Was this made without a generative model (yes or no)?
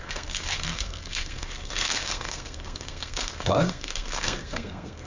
no